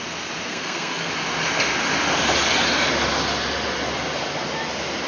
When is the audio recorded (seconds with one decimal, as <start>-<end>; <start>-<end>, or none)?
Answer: 0.0-0.5; 1.1-5.1